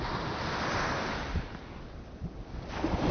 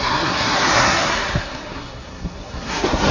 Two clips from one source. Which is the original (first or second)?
first